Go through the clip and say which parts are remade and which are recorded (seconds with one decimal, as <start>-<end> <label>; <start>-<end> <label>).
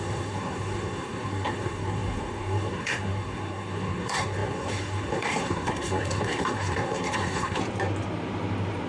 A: 0.0-7.6 remade; 7.6-8.9 recorded